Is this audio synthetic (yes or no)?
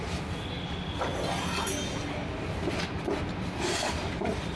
no